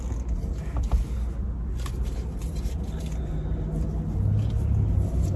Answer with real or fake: real